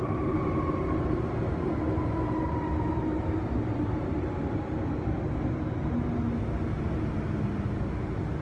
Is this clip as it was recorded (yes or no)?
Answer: yes